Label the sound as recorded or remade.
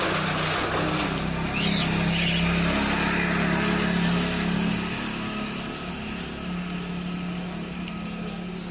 recorded